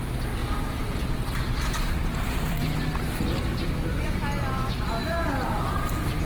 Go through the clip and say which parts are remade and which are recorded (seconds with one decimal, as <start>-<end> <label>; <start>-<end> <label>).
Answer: 0.0-0.4 recorded; 0.4-4.2 remade; 4.2-6.3 recorded